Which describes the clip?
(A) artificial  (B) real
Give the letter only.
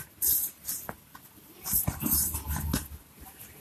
B